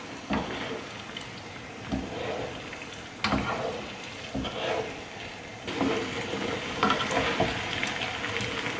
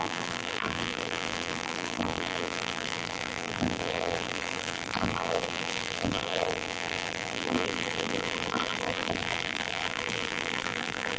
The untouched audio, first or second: first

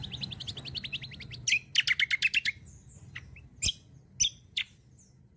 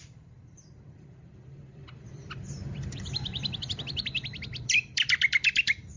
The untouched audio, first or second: first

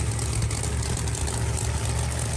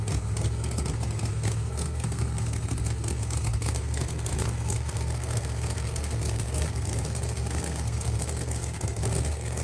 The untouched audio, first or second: first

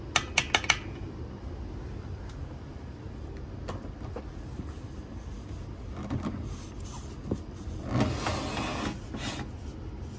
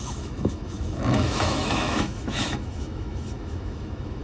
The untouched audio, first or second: first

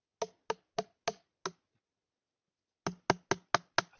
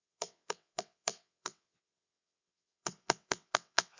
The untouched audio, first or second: first